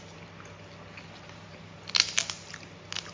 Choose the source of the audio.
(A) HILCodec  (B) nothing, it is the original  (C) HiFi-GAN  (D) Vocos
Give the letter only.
B